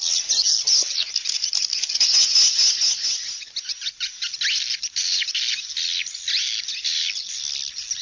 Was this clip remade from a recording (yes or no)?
no